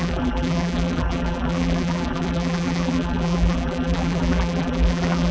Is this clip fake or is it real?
fake